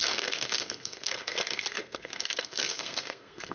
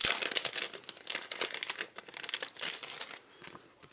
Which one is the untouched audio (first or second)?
second